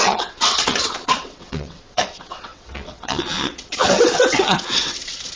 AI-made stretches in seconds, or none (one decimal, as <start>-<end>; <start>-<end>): 0.0-5.4